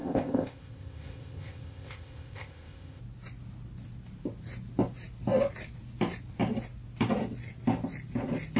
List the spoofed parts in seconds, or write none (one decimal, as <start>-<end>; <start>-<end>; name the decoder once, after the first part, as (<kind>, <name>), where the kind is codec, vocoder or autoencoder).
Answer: 0.0-3.0 (codec, ZipCodec)